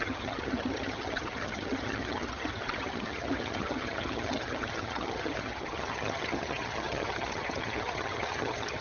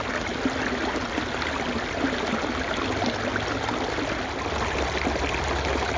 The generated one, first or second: first